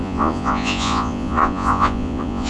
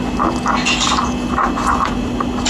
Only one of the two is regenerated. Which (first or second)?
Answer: first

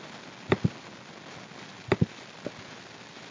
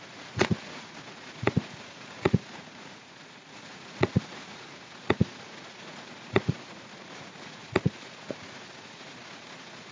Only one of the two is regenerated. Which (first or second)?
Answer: second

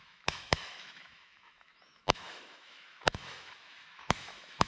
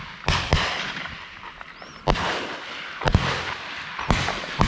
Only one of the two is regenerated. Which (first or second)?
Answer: first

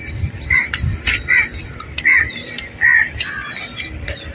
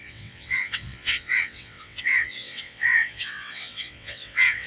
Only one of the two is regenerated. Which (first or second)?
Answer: second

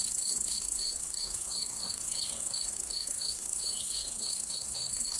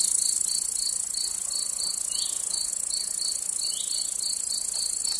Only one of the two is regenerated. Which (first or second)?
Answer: first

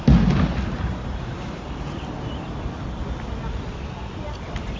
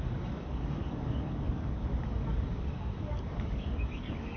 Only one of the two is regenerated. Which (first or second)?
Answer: second